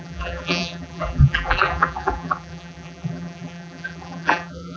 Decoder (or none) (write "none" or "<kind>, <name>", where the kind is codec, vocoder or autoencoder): vocoder, BigVGAN v2